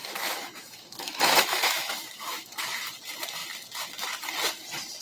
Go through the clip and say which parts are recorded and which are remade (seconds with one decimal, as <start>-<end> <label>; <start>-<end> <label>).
0.0-2.9 remade; 2.9-5.0 recorded